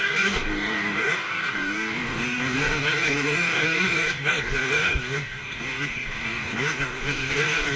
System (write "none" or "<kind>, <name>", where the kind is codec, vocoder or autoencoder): codec, DAC